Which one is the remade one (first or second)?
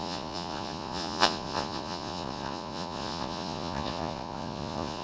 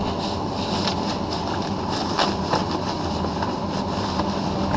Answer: first